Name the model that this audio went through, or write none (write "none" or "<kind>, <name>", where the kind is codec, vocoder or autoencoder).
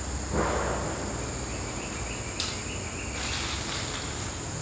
vocoder, BigVGAN v2